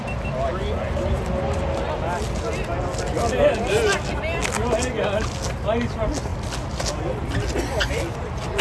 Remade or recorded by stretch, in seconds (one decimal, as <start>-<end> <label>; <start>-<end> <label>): 0.0-8.6 recorded

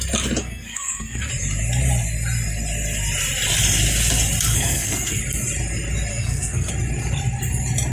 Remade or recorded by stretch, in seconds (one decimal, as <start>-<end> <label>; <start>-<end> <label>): 0.0-0.4 recorded; 0.4-1.3 remade; 1.3-4.5 recorded; 4.5-5.2 remade; 5.2-6.1 recorded; 6.1-6.7 remade; 6.7-7.9 recorded

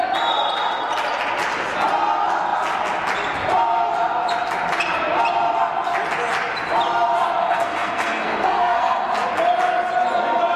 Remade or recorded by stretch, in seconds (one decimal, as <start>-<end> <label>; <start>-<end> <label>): 0.0-7.4 recorded; 7.4-9.1 remade; 9.1-10.6 recorded

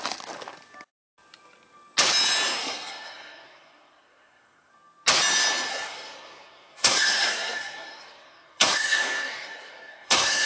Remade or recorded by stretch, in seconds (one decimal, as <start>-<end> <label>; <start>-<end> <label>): 0.0-2.6 recorded; 2.6-4.7 remade; 4.7-5.7 recorded; 5.7-10.5 remade

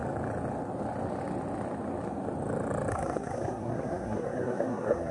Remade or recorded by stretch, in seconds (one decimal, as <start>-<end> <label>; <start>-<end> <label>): 0.0-2.9 recorded; 2.9-5.1 remade

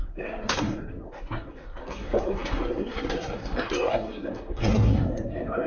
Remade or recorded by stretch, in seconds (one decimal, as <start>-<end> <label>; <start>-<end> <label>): 0.0-5.7 remade

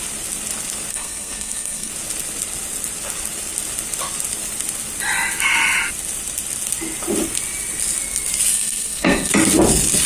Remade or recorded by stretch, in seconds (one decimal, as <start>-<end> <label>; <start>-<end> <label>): 0.0-0.9 recorded; 0.9-1.9 remade; 1.9-8.5 recorded; 8.5-9.3 remade; 9.3-10.1 recorded